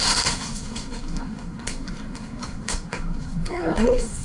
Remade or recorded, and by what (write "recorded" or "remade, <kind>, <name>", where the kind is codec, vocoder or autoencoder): remade, codec, SNAC